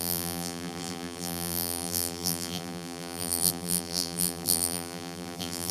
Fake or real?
fake